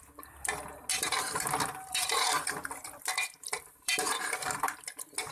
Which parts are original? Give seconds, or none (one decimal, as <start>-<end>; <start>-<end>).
0.0-0.9; 4.1-5.3